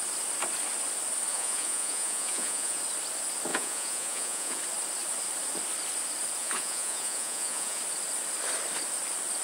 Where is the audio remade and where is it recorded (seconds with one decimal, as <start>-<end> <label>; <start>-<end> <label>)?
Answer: 0.0-1.3 recorded; 1.3-2.8 remade; 2.8-3.5 recorded; 3.5-4.6 remade; 4.6-6.4 recorded; 6.4-7.8 remade; 7.8-9.4 recorded